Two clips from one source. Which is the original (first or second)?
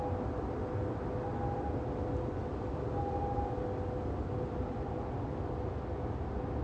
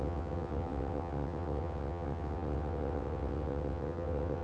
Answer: first